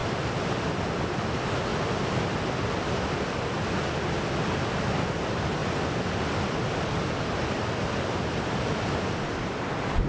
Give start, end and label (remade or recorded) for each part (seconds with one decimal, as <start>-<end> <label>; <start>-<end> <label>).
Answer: 0.0-10.1 recorded